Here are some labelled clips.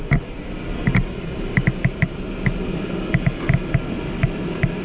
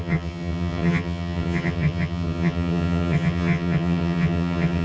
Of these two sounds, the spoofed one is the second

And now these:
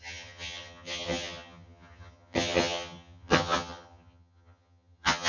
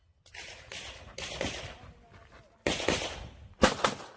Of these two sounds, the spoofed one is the first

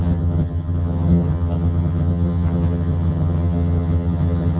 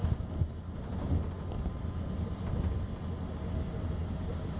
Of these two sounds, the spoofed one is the first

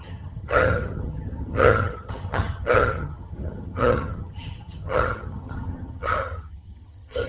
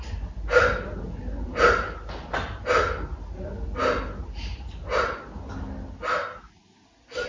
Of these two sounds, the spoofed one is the first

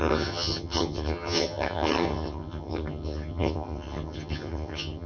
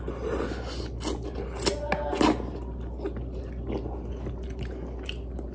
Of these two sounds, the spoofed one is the first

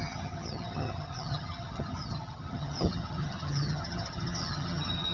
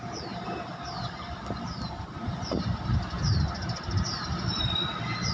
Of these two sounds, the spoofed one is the first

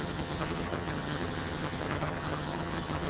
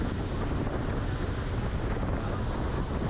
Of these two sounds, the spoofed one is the first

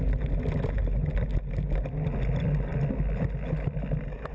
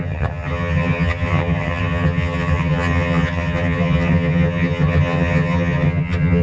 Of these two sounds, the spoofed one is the second